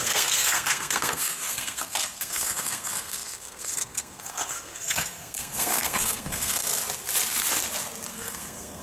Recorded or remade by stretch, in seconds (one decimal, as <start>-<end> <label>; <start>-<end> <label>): 0.0-6.7 remade; 6.7-8.1 recorded; 8.1-8.8 remade